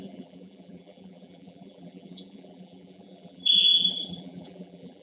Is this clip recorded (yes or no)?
no